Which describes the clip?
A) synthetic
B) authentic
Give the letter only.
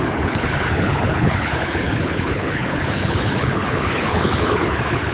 A